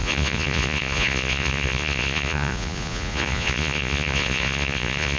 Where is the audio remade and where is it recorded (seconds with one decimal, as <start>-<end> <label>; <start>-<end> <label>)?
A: 0.0-5.2 remade